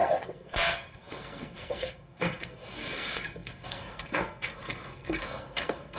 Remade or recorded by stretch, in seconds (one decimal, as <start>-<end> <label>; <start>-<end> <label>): 0.0-6.0 remade